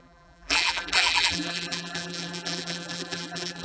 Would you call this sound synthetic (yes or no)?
yes